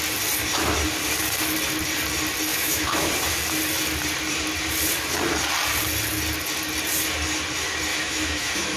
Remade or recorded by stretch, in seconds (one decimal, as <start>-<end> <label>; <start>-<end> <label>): 0.0-2.5 recorded; 2.5-3.1 remade; 3.1-7.9 recorded; 7.9-8.8 remade